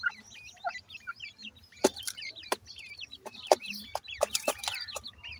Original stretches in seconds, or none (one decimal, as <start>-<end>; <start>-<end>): none